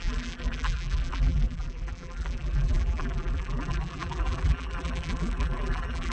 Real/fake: fake